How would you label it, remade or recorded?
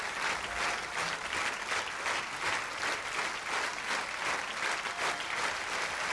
recorded